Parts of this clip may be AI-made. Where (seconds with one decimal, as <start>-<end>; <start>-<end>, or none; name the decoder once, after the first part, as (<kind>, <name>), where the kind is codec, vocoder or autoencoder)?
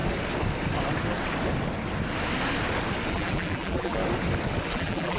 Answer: 3.1-4.0 (vocoder, BigVGAN v2); 4.7-5.2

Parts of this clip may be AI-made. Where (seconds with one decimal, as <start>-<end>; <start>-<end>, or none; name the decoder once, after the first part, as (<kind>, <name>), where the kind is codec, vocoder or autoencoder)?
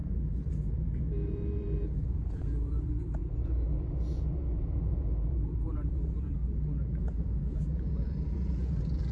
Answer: 0.0-6.4 (vocoder, Vocos); 7.0-9.1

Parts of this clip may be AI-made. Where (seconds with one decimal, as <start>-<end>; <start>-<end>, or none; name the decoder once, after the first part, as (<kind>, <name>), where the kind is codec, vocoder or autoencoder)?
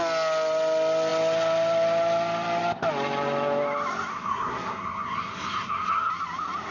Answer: 4.1-6.1 (codec, SNAC)